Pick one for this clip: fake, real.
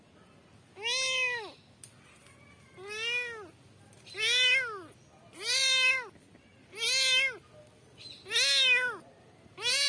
real